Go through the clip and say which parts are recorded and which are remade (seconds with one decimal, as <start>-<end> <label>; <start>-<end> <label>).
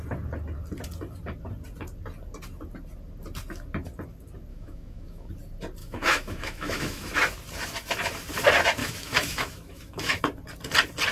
0.0-4.5 recorded; 4.5-5.3 remade; 5.3-5.8 recorded; 5.8-7.1 remade; 7.1-8.8 recorded; 8.8-10.2 remade; 10.2-11.1 recorded